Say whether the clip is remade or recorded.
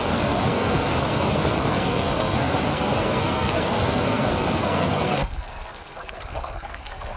remade